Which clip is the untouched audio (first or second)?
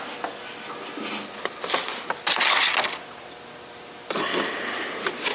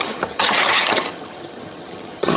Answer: first